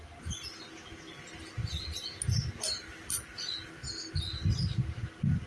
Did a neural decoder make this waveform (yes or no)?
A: no